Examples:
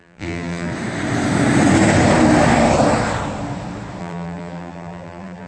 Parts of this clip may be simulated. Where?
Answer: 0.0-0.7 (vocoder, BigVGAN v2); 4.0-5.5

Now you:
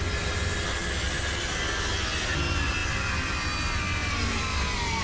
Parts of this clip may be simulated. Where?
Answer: 2.8-3.3 (vocoder, BigVGAN v2); 4.0-5.0